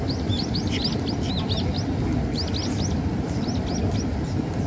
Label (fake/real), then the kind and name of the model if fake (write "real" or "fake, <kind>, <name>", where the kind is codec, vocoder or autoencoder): real